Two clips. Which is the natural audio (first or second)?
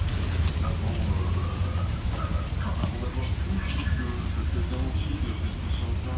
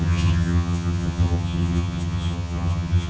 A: first